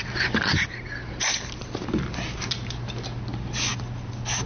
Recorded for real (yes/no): yes